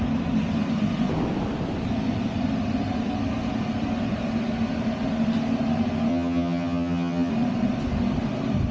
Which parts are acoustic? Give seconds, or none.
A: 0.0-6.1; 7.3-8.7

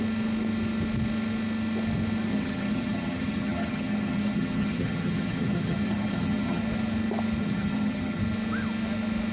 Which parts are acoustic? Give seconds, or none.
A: 0.0-2.3; 6.6-7.4; 8.2-9.3

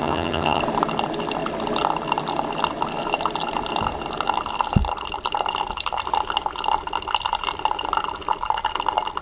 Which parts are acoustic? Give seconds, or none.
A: 0.6-9.2

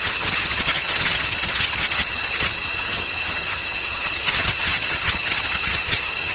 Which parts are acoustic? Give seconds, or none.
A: none